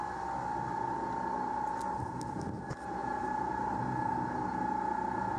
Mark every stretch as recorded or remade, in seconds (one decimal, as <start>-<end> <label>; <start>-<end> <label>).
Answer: 0.0-3.0 recorded; 3.0-3.7 remade; 3.7-5.4 recorded